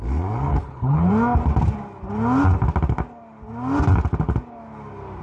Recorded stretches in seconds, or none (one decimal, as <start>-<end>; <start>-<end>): 0.0-0.5; 1.1-5.2